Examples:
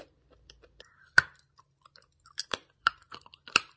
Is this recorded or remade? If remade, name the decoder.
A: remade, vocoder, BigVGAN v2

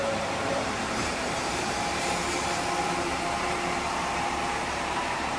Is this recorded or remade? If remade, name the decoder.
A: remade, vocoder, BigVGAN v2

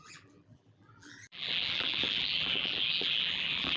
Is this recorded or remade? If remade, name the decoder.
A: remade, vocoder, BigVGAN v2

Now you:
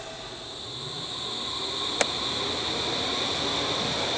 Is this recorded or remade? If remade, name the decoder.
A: recorded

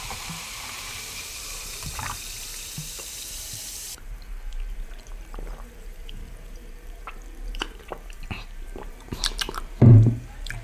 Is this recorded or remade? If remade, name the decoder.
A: remade, vocoder, BigVGAN v2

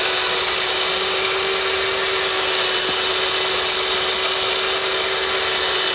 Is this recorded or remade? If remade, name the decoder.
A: recorded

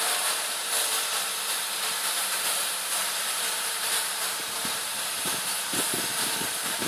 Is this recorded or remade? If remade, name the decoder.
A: remade, vocoder, BigVGAN v2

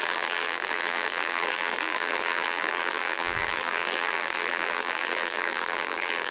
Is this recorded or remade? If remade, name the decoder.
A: remade, vocoder, BigVGAN v2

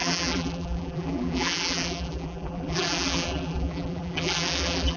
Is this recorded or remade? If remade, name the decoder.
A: remade, vocoder, BigVGAN v2